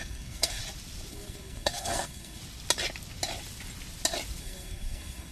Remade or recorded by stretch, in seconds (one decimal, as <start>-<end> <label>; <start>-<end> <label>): 0.0-0.6 remade; 0.6-1.1 recorded; 1.1-2.4 remade; 2.4-4.4 recorded; 4.4-5.3 remade